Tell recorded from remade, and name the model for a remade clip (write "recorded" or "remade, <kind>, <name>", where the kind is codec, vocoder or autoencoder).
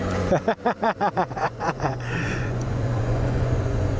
remade, vocoder, Vocos